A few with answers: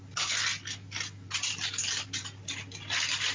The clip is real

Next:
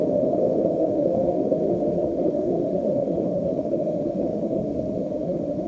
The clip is fake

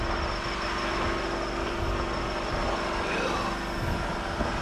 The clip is real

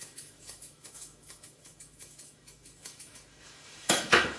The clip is fake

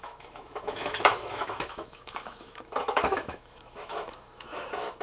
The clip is fake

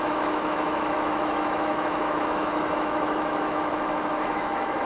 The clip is fake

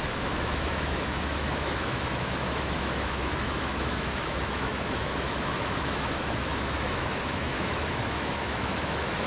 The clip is fake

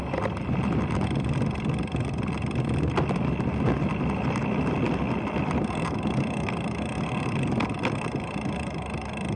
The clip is real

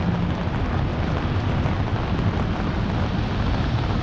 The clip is real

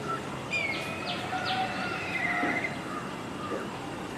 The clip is real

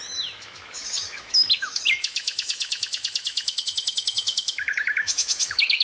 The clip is fake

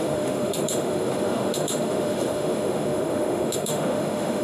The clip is fake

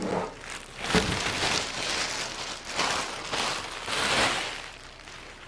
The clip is real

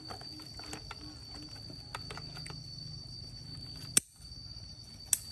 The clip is real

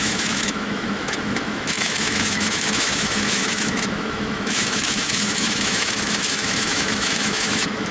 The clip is fake